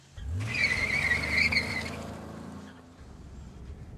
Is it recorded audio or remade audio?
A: recorded